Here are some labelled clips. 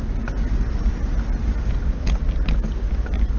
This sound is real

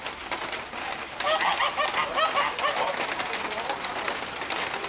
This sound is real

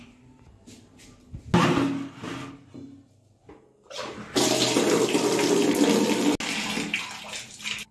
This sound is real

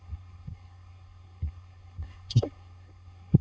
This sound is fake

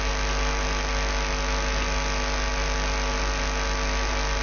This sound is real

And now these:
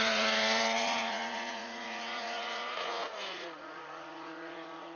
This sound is fake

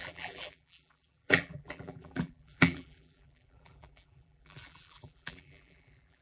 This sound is fake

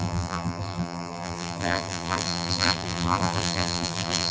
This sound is fake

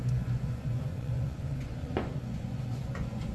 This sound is fake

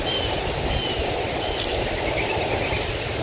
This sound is real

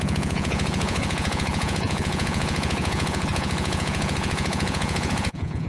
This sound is fake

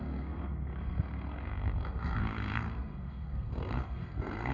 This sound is fake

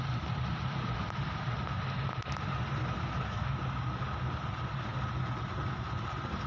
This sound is real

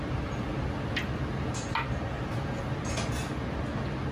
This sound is real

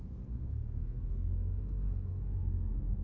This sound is fake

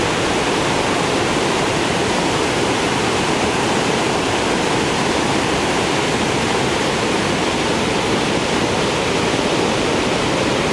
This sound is fake